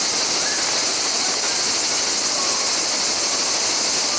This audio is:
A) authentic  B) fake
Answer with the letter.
A